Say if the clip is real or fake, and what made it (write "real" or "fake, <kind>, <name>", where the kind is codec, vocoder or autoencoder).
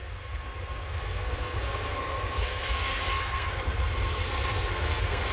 fake, codec, SNAC